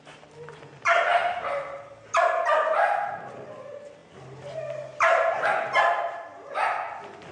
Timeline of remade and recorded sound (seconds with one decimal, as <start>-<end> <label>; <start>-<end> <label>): 0.0-7.3 recorded

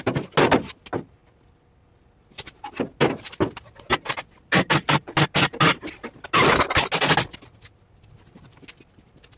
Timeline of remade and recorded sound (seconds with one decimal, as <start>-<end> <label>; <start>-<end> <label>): 0.0-9.4 recorded

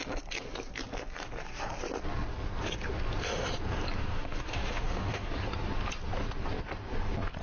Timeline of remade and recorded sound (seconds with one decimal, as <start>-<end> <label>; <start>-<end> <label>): 0.0-4.0 recorded; 4.0-5.3 remade; 5.3-7.4 recorded

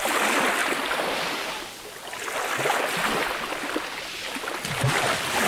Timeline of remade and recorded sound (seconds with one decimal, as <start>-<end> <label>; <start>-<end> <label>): 0.0-5.5 recorded

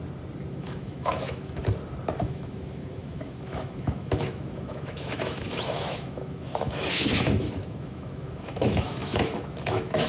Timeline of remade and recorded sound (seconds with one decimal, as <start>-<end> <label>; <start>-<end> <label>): 0.0-0.5 recorded; 0.5-1.6 remade; 1.6-2.2 recorded; 2.2-10.1 remade

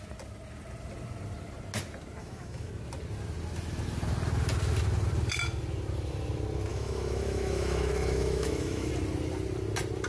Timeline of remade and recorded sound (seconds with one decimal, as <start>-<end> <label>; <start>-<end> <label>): 0.0-2.2 recorded; 2.2-2.7 remade; 2.7-6.7 recorded; 6.7-8.9 remade; 8.9-10.1 recorded